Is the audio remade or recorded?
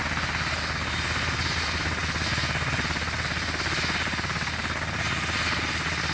recorded